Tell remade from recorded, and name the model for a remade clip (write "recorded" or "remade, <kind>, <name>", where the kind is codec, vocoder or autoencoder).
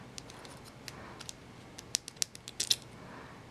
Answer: recorded